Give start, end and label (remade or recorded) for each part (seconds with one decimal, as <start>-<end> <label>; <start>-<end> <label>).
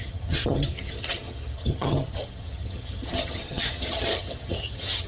0.0-5.1 remade